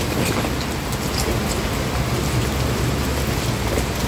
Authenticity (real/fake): real